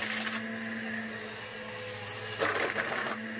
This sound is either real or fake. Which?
real